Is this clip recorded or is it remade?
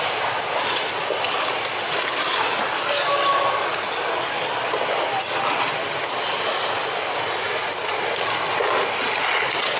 recorded